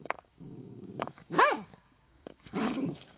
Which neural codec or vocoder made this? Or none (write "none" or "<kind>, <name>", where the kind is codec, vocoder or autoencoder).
codec, DAC